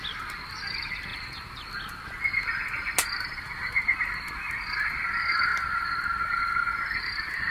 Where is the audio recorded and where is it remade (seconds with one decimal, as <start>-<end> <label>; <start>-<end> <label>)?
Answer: 0.0-7.5 recorded